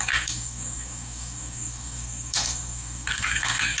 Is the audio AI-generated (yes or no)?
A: yes